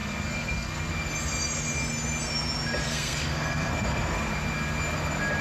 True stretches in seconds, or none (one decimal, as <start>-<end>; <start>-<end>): 0.9-2.8; 4.3-5.4